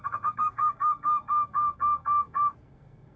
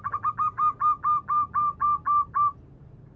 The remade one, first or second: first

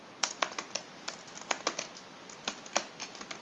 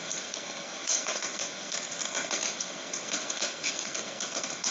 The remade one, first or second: second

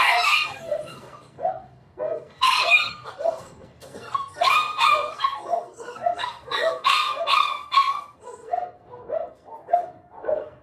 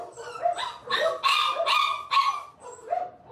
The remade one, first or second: first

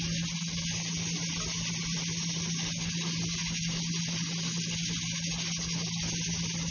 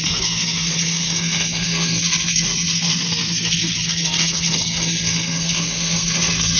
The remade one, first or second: second